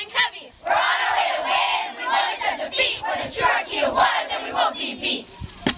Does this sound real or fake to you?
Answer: real